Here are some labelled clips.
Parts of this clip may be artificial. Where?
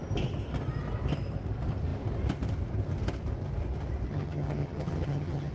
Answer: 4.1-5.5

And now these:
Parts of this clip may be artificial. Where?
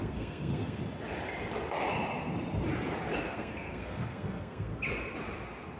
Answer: 0.0-0.8; 3.2-4.7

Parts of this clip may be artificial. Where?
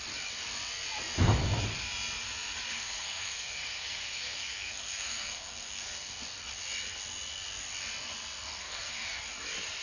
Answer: 2.7-6.1; 8.6-9.2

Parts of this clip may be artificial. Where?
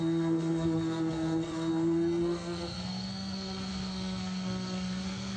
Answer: 0.0-5.4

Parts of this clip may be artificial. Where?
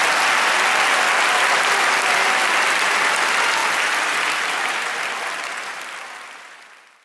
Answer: none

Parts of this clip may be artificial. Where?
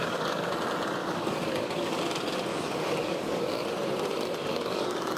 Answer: 0.0-0.5; 1.0-2.0; 2.5-3.5; 4.4-5.2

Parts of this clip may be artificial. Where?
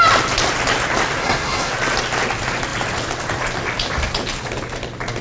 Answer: 1.2-1.7